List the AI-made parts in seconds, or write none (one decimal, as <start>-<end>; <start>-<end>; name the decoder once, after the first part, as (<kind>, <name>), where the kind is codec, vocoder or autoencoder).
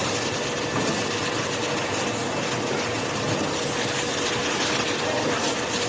none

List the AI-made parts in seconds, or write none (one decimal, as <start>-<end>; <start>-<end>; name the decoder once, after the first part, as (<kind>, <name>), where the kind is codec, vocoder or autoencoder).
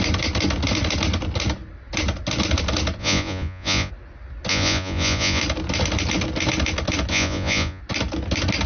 3.0-3.9 (vocoder, Vocos); 4.5-5.4; 7.1-7.8